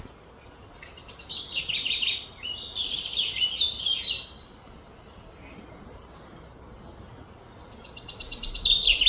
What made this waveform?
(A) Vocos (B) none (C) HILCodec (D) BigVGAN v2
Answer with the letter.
B